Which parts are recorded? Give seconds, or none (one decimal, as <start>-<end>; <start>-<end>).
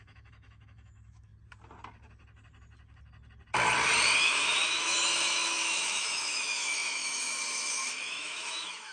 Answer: 1.3-4.2